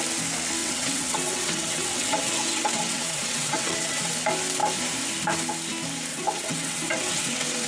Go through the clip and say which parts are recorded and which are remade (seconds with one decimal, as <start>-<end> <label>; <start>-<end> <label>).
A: 0.0-0.6 recorded; 0.6-4.1 remade; 4.1-6.1 recorded; 6.1-7.7 remade